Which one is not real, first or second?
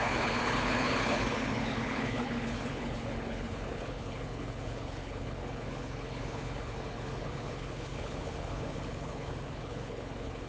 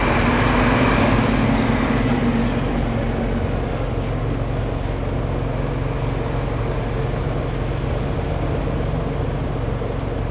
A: first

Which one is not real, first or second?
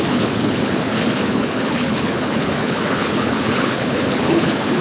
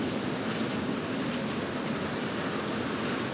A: first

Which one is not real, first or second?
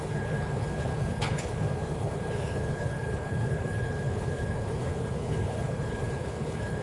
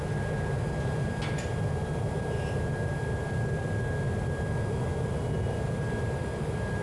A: first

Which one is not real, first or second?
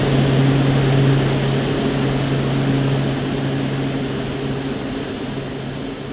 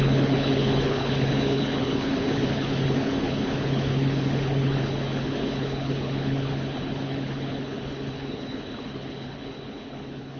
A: second